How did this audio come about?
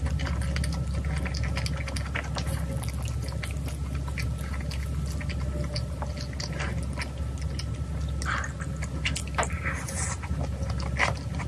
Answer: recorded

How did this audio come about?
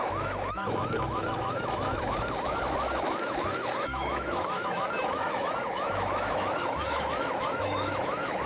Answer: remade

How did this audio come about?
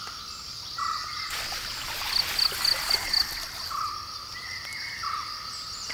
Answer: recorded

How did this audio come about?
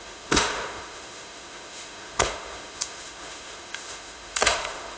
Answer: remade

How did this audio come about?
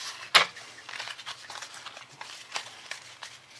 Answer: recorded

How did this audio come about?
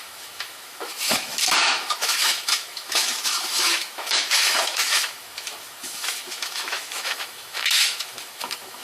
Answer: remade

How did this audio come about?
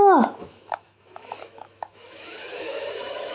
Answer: remade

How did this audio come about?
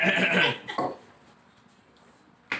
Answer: recorded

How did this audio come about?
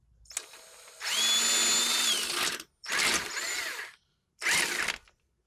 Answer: recorded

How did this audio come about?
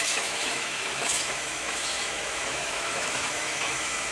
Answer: remade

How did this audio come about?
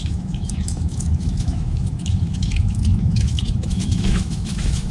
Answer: remade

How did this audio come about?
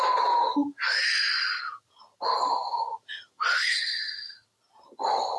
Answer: recorded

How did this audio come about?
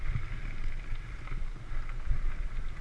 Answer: recorded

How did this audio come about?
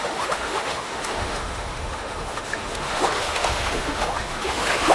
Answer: remade